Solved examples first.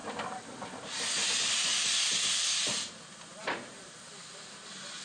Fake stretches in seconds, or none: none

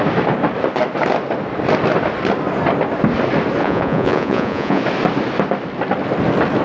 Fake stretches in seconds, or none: 3.6-4.8 (vocoder, Vocos)